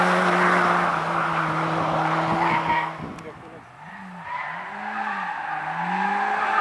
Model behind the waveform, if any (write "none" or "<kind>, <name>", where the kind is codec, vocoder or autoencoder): none